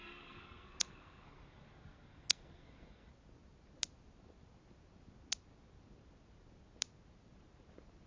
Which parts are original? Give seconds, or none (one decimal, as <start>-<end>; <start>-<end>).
3.1-8.1